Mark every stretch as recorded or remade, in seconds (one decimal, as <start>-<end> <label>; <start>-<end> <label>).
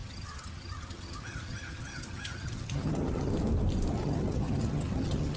0.0-3.3 remade; 3.3-3.9 recorded; 3.9-5.4 remade